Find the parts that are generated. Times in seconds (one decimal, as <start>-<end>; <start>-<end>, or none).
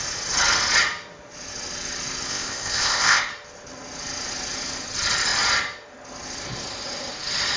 2.3-3.3